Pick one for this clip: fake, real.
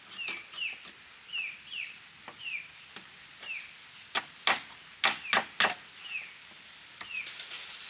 real